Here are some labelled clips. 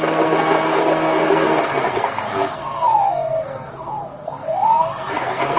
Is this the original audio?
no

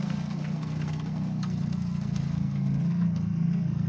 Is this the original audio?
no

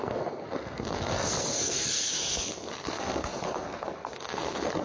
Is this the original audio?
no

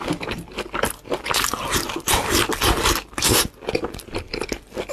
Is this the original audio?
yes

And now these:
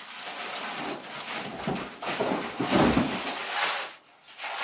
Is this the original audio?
yes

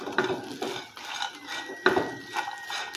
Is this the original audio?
yes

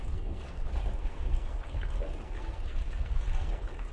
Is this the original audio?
no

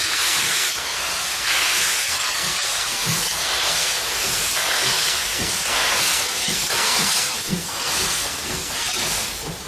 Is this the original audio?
no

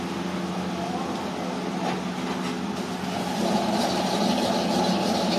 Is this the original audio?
yes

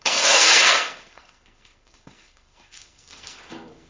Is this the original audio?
no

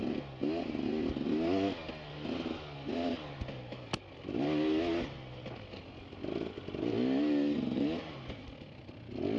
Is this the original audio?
yes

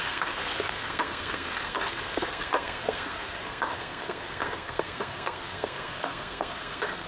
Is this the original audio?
no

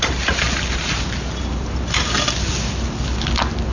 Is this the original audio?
yes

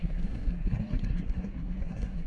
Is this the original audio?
no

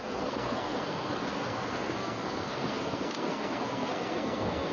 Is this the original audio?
no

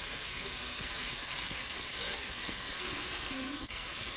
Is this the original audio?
no